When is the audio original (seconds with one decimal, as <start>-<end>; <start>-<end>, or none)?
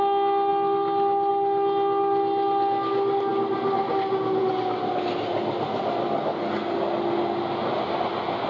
0.0-8.5